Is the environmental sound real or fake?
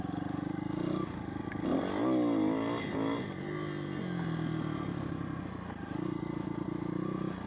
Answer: real